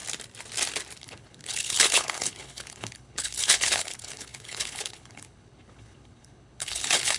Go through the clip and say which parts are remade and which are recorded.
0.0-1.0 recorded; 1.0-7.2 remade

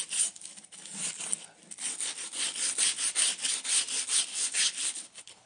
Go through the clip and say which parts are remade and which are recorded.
0.0-4.3 recorded; 4.3-5.5 remade

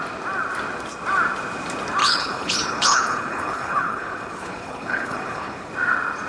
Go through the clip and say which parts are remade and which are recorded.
0.0-2.0 recorded; 2.0-5.7 remade; 5.7-6.3 recorded

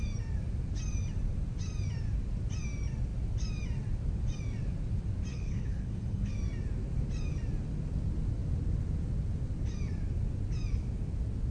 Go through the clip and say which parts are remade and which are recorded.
0.0-5.3 recorded; 5.3-6.3 remade; 6.3-11.5 recorded